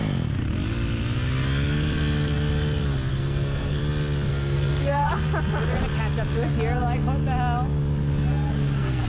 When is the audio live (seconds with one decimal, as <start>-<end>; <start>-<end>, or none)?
0.0-3.1; 3.8-4.3; 5.1-8.3